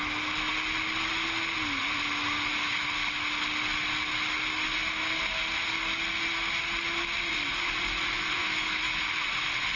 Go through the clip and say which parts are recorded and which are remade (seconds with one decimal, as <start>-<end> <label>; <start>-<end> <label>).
0.0-8.4 recorded; 8.4-9.1 remade; 9.1-9.8 recorded